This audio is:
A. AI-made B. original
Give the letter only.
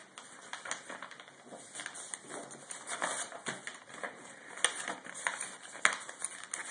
B